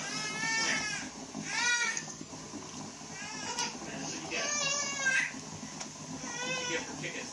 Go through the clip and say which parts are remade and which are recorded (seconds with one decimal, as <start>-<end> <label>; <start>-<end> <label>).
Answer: 0.0-1.7 recorded; 1.7-2.3 remade; 2.3-7.3 recorded